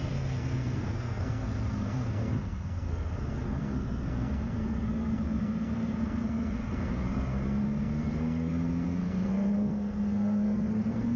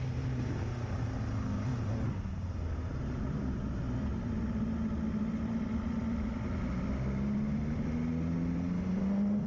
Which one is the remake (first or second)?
first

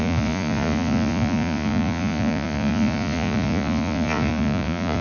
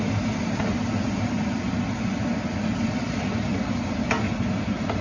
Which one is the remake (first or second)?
first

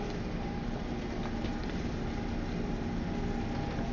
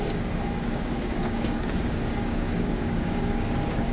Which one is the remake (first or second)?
second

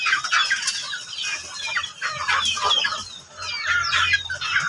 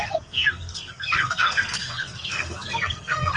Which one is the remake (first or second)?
second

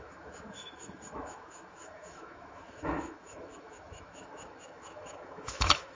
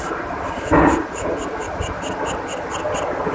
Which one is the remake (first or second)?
first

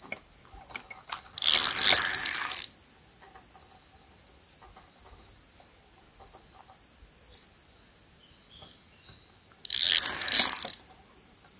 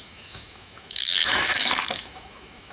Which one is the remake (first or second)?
second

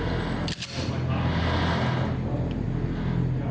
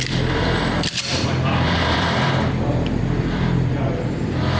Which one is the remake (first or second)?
second